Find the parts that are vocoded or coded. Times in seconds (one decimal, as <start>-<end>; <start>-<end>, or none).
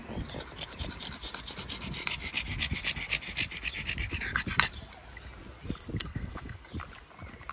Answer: 6.0-6.7